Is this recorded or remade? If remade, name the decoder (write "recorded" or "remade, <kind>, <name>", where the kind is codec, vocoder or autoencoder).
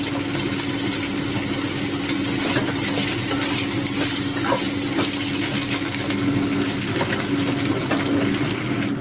recorded